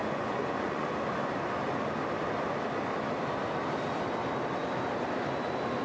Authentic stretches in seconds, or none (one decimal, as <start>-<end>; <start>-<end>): 0.9-5.8